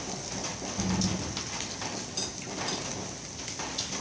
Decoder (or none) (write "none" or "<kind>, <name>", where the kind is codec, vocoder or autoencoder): none